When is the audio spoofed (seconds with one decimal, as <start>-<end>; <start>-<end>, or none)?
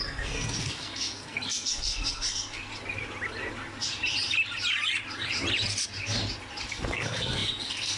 0.0-2.7; 6.7-8.0